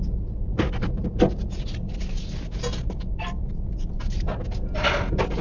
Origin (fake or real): real